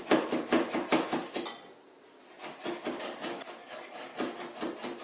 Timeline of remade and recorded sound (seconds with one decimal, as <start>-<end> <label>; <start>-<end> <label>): 0.0-3.0 recorded; 3.0-4.1 remade; 4.1-5.0 recorded